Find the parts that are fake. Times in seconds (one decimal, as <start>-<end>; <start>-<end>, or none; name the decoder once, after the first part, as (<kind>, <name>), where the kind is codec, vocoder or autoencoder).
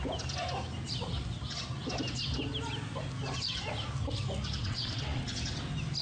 4.6-5.2 (vocoder, WaveNeXt)